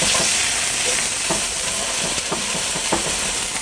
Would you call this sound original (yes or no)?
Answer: no